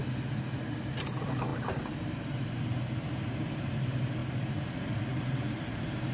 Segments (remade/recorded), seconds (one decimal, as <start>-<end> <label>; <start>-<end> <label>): 0.0-0.9 recorded; 0.9-4.2 remade; 4.2-5.2 recorded; 5.2-6.1 remade